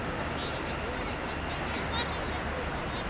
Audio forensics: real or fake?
real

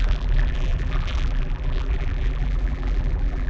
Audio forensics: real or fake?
fake